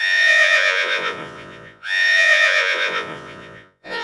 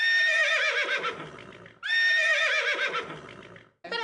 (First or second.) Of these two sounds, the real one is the second